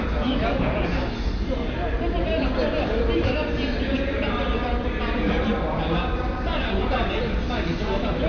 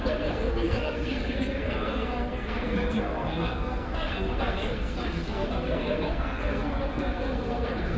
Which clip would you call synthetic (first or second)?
second